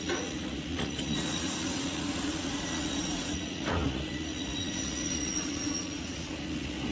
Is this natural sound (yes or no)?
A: no